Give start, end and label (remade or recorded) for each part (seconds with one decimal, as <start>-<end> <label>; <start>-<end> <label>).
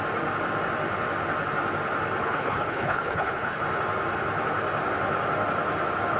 0.0-2.2 recorded; 2.2-3.6 remade; 3.6-6.2 recorded